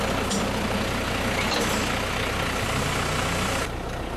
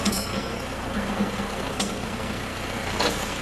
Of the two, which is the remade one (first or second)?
second